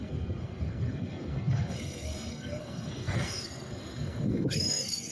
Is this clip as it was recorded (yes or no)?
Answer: no